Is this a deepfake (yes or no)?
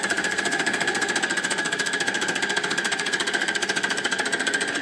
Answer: yes